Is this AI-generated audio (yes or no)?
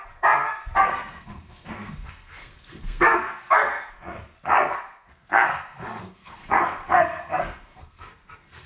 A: yes